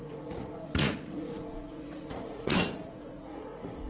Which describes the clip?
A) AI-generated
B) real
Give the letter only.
A